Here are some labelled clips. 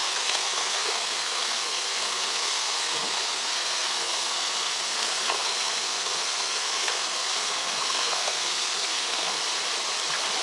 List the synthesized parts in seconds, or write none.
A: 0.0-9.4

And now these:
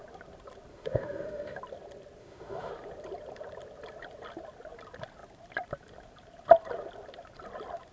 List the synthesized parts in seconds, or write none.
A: 0.7-1.6; 2.2-2.7